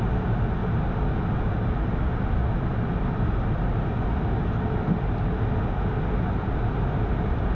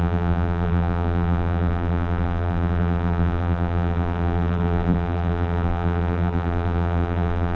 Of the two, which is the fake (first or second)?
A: second